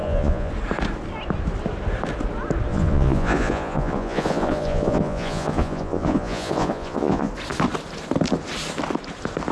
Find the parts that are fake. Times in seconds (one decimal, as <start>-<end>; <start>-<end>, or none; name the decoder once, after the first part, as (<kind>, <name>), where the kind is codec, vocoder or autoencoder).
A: 0.0-0.5 (vocoder, Vocos); 2.7-7.3